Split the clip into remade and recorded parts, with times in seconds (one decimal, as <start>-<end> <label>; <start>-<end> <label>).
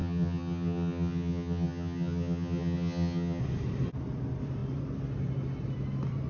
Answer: 0.0-3.4 remade; 3.4-6.3 recorded